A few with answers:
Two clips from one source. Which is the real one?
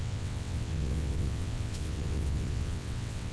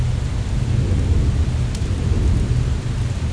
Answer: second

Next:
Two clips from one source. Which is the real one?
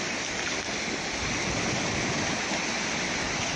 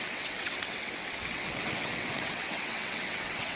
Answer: first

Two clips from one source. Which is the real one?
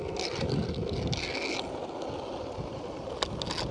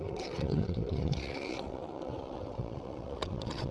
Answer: first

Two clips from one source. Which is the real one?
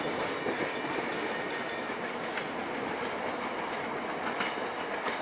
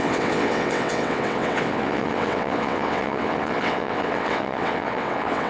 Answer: first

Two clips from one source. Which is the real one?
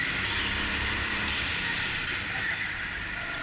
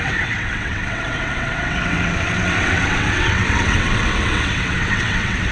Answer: first